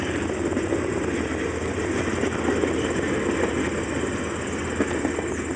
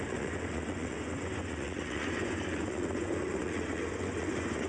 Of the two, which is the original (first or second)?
first